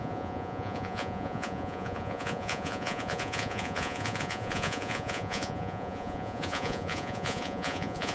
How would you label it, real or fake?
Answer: fake